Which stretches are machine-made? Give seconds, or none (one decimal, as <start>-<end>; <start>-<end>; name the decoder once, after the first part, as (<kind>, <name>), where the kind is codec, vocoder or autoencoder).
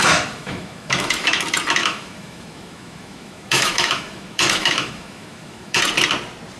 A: 0.0-1.4 (autoencoder, DAC-VAE); 1.8-5.8